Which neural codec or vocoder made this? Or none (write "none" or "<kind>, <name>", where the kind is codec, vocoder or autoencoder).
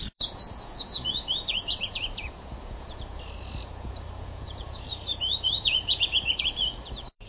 vocoder, Vocos